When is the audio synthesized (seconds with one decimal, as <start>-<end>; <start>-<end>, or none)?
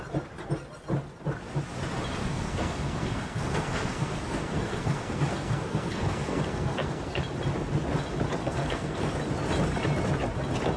2.2-7.2; 8.4-9.1